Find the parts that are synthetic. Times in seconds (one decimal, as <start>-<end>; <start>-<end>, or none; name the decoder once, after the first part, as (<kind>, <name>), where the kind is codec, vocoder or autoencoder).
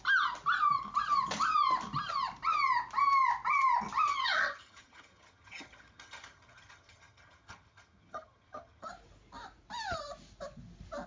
4.1-8.9 (vocoder, HiFi-GAN)